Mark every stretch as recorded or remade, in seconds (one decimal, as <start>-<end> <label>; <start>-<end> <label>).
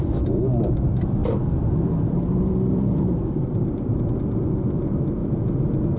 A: 0.0-1.2 recorded; 1.2-4.8 remade; 4.8-5.2 recorded; 5.2-6.0 remade